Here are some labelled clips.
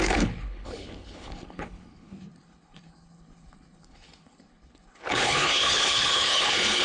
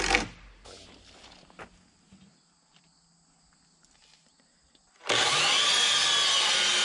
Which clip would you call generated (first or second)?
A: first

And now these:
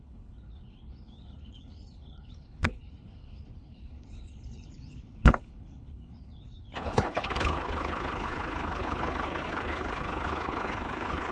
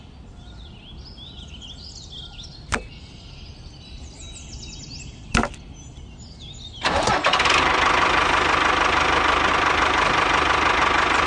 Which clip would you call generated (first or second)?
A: first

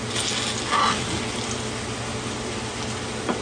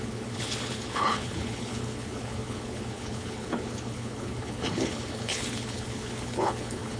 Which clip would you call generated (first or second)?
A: second